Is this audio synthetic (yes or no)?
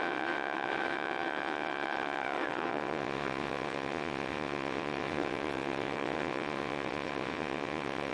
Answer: yes